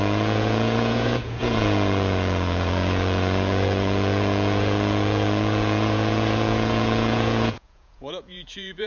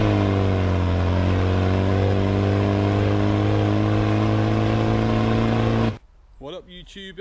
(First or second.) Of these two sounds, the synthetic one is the first